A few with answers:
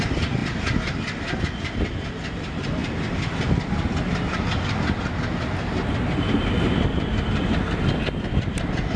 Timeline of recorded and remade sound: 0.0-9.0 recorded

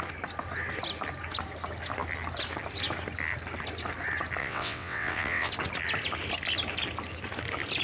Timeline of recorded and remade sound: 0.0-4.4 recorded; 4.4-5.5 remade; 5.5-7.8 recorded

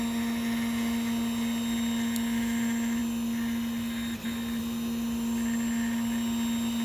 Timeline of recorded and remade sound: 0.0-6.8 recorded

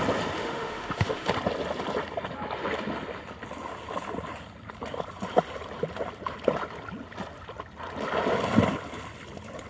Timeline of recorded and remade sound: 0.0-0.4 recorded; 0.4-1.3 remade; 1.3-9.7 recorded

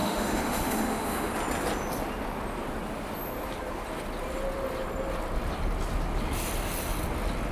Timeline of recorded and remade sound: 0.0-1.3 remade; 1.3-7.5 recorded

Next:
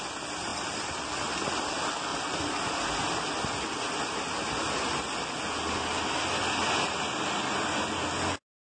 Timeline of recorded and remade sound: 0.0-8.6 recorded

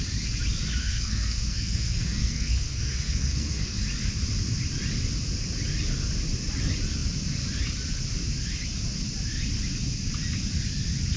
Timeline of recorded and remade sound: 0.0-0.8 recorded; 0.8-3.8 remade; 3.8-11.2 recorded